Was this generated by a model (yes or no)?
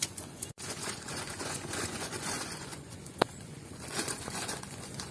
yes